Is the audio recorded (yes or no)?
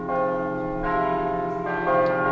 yes